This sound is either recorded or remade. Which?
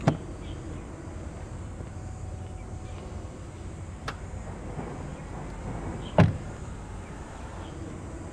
recorded